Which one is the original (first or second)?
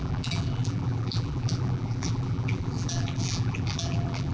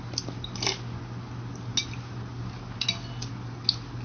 second